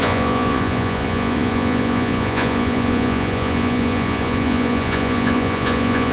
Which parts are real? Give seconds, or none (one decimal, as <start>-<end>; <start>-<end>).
none

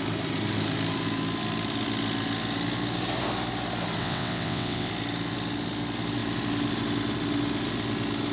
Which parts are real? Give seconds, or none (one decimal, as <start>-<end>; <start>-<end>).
0.0-4.0; 4.9-8.3

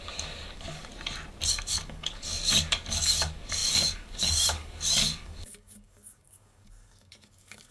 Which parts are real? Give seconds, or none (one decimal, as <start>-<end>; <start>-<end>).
0.9-1.5

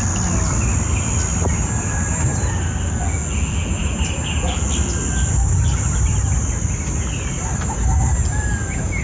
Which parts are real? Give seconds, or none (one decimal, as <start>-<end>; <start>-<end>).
0.0-9.0

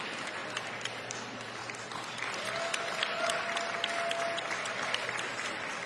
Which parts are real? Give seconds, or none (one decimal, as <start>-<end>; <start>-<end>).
1.6-5.1

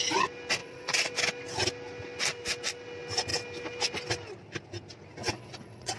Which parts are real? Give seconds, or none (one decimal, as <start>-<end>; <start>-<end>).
0.0-0.6; 1.1-5.2

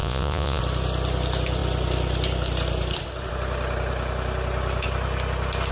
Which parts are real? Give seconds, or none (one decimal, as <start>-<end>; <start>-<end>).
0.6-5.7

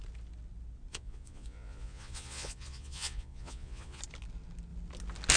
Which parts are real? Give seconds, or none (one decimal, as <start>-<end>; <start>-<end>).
0.0-0.9; 4.0-5.4